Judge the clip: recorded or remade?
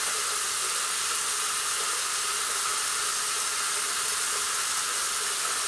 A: recorded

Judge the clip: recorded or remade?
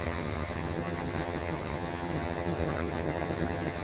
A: remade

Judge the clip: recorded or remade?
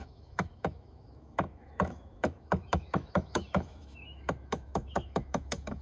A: remade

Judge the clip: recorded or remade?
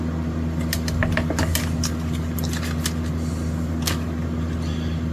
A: recorded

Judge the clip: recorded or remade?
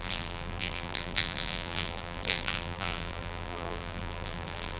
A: remade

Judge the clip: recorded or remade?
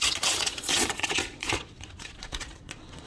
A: remade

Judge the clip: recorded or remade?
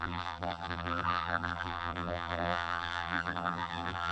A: remade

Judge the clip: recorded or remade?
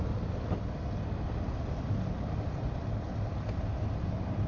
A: recorded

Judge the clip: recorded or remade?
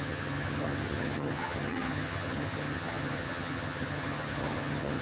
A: remade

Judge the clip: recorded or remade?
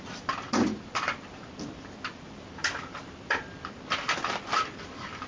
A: recorded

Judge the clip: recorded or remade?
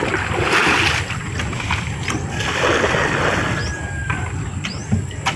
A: recorded